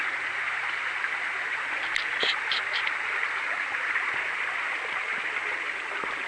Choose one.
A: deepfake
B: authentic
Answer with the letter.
B